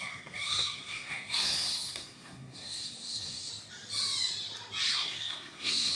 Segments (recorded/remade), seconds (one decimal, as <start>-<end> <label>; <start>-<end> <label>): 0.0-3.5 remade; 3.5-4.9 recorded; 4.9-6.0 remade